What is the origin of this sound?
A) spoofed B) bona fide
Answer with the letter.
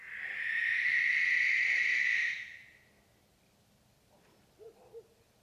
B